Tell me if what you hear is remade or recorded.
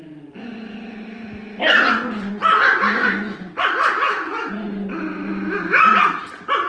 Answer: recorded